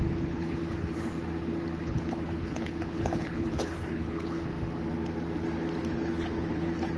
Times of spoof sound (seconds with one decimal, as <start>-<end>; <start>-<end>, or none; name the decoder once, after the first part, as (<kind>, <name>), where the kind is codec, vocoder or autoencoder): 0.0-1.1 (codec, HILCodec); 1.8-4.5; 5.9-7.0